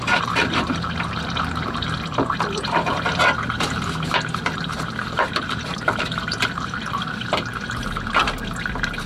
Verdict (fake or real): fake